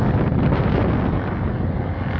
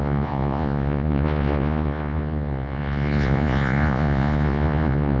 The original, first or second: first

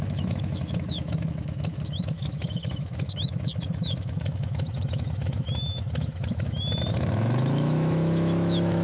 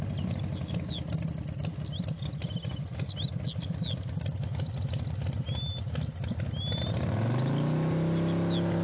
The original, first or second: second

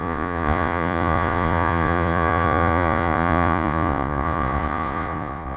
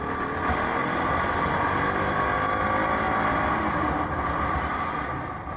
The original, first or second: second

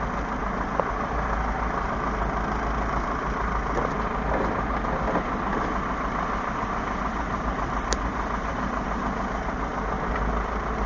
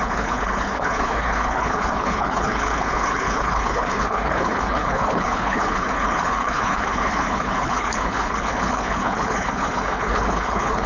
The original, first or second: first